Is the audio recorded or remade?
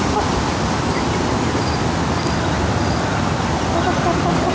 recorded